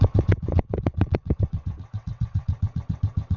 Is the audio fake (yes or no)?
yes